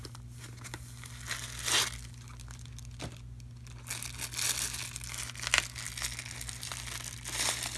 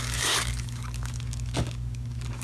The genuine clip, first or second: first